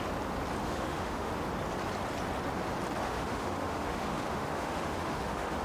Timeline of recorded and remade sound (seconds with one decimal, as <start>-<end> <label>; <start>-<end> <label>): 0.0-0.6 recorded; 0.6-1.3 remade; 1.3-3.0 recorded; 3.0-5.6 remade